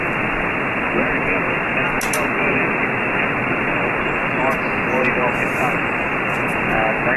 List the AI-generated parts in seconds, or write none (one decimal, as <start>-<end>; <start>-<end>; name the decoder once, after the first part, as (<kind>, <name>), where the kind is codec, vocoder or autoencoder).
none